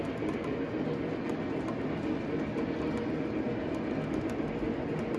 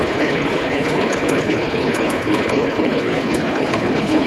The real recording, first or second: first